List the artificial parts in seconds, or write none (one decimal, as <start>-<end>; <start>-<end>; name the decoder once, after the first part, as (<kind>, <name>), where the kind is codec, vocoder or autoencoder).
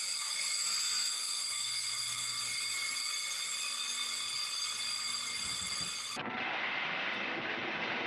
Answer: 0.6-2.4 (codec, SNAC)